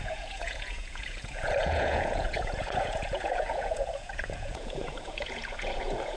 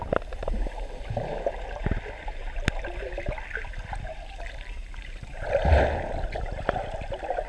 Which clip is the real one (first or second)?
second